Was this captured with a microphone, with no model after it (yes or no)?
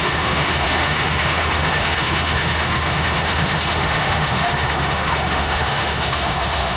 no